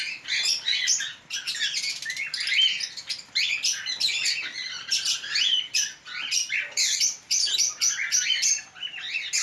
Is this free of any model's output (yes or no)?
yes